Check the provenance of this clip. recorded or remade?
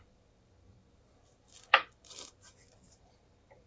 remade